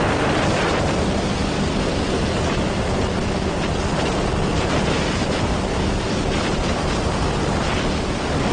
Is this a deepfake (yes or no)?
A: yes